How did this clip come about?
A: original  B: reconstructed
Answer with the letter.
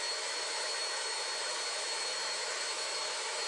B